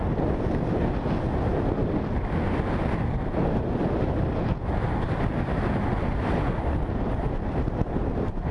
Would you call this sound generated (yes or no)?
no